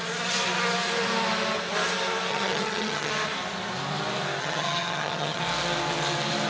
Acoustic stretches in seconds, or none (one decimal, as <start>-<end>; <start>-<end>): 0.0-2.3; 3.1-4.4; 5.4-6.5